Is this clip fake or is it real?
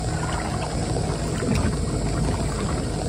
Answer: real